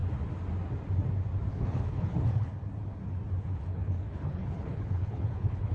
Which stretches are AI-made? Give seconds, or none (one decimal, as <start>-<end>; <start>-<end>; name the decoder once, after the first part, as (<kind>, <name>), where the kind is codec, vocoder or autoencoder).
1.5-2.5 (codec, HILCodec); 3.4-5.7